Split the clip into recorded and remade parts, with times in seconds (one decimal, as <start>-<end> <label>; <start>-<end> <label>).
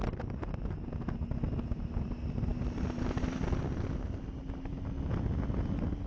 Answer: 0.0-2.5 recorded; 2.5-4.0 remade; 4.0-6.1 recorded